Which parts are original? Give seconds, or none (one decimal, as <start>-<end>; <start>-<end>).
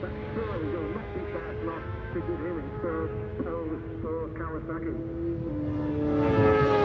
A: 0.0-1.9; 2.7-3.3; 3.8-6.8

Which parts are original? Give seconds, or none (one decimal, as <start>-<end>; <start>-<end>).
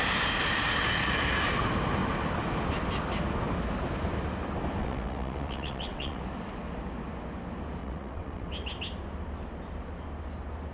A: 0.0-4.8; 6.2-7.8; 8.5-10.7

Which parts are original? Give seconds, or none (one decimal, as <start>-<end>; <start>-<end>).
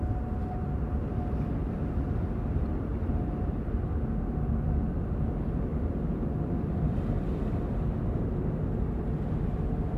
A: 0.0-2.9; 4.8-5.7; 8.2-10.0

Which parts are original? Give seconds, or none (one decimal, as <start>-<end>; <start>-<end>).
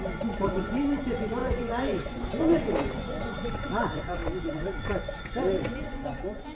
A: none